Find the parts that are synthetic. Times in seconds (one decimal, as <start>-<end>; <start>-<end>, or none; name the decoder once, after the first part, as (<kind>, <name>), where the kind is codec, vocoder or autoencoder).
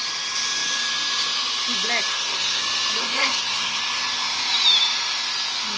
2.1-2.6 (codec, SNAC); 3.0-3.8